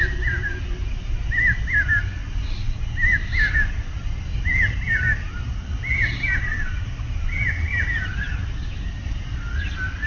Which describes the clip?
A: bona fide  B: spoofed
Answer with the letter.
A